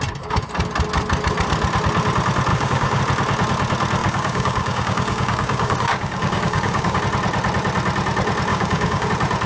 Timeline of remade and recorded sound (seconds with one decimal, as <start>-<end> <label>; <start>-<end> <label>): 0.0-2.5 recorded; 2.5-3.0 remade; 3.0-4.0 recorded; 4.0-7.0 remade; 7.0-8.5 recorded; 8.5-9.1 remade; 9.1-9.5 recorded